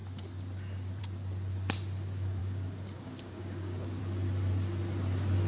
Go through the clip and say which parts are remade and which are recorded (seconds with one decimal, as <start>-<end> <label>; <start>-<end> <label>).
0.0-2.4 recorded; 2.4-4.0 remade; 4.0-5.5 recorded